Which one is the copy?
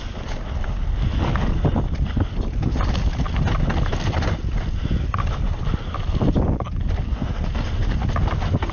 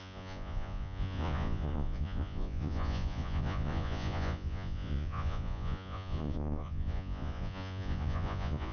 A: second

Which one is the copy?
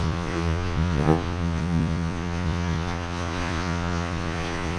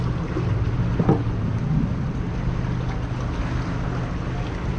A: first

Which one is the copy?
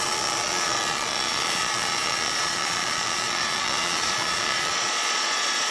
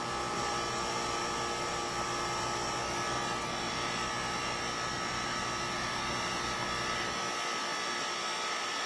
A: first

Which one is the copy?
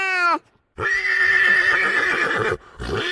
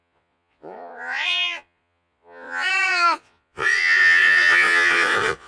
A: second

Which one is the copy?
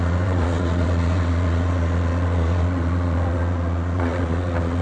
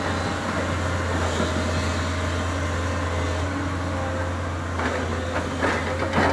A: first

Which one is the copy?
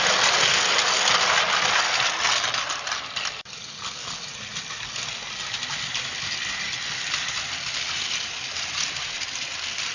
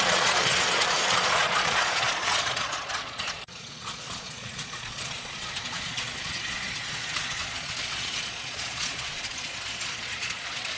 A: second